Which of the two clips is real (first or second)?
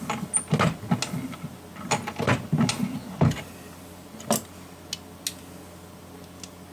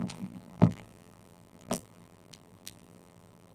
first